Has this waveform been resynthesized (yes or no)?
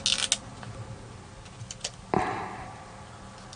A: no